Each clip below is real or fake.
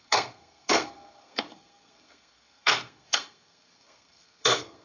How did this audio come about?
fake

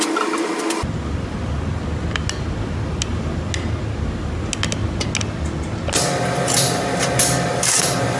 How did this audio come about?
real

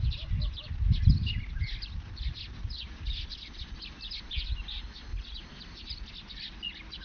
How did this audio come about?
real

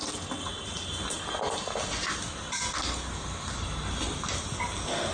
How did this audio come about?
real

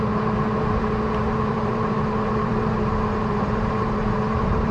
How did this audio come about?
fake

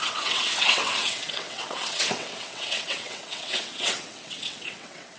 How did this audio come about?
fake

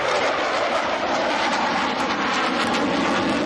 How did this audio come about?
real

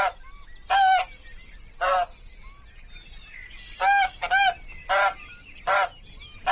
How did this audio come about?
real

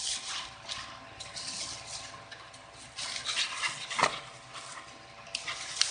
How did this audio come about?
real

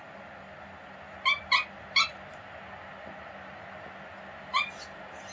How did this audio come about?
real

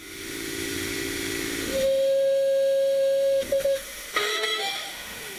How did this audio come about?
fake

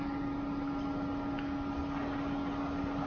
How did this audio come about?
real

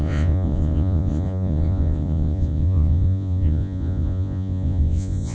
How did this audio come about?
fake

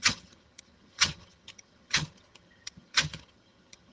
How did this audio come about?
fake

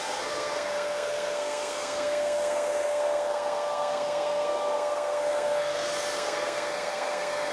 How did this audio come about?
fake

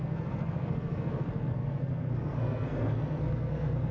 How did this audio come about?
fake